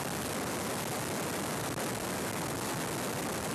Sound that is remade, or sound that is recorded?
recorded